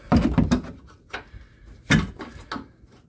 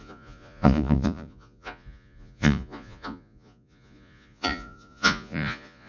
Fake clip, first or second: second